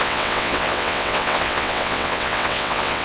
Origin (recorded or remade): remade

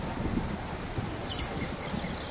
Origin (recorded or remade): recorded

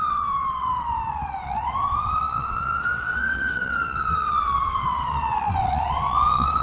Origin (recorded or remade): remade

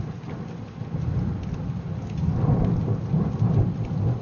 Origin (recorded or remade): recorded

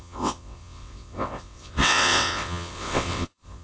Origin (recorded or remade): remade